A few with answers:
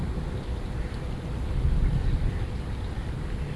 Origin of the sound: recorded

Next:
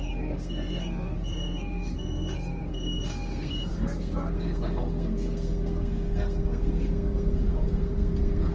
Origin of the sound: remade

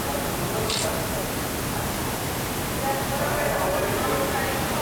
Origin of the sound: recorded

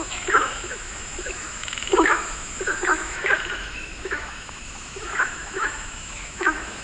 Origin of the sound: remade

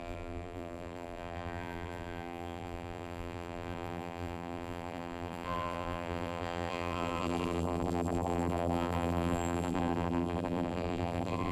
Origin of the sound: remade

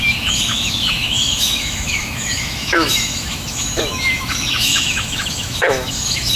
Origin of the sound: remade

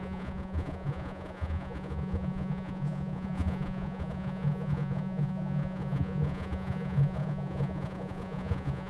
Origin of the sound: remade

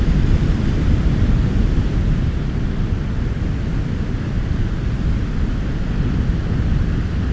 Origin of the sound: recorded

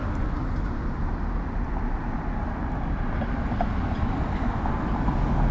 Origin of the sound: recorded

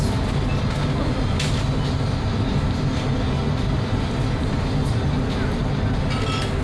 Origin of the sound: recorded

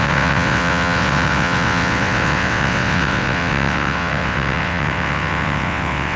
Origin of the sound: remade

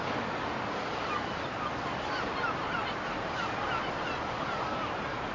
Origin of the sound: remade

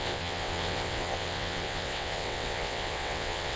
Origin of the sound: remade